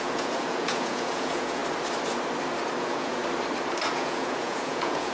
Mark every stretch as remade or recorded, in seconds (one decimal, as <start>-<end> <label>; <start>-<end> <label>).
0.0-1.6 remade; 1.6-2.8 recorded; 2.8-3.2 remade; 3.2-3.9 recorded; 3.9-5.1 remade